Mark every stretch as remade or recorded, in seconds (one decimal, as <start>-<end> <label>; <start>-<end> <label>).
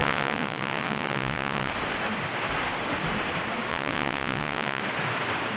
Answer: 0.0-1.7 remade; 1.7-3.7 recorded; 3.7-4.8 remade; 4.8-5.6 recorded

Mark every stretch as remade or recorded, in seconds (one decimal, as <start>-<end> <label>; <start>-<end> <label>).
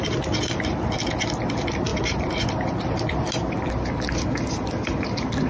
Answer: 0.0-5.5 recorded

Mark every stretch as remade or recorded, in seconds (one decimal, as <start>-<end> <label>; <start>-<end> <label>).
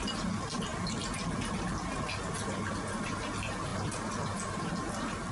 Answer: 0.0-5.3 recorded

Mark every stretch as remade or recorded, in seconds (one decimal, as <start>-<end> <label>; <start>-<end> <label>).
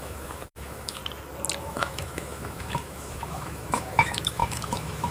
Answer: 0.0-1.0 remade; 1.0-1.6 recorded; 1.6-5.1 remade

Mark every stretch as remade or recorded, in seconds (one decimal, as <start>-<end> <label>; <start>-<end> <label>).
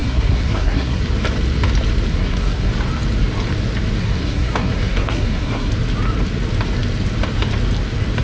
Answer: 0.0-1.0 remade; 1.0-2.1 recorded; 2.1-2.7 remade; 2.7-4.0 recorded; 4.0-5.7 remade; 5.7-8.2 recorded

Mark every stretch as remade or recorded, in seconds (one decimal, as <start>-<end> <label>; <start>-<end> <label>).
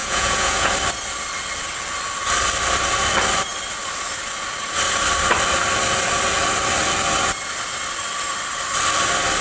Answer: 0.0-0.7 remade; 0.7-9.4 recorded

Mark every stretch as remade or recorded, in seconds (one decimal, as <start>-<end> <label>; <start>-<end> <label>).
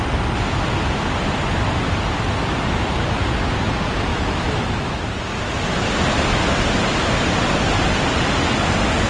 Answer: 0.0-4.1 recorded; 4.1-5.0 remade; 5.0-9.1 recorded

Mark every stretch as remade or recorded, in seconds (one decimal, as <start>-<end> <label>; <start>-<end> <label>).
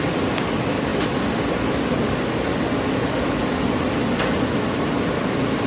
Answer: 0.0-5.7 recorded